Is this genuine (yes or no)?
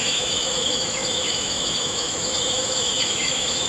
no